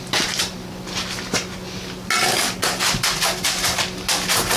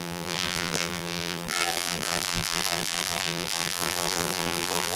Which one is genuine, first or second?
first